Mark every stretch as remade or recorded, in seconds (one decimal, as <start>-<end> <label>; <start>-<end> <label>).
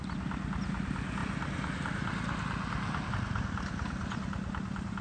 0.0-5.0 recorded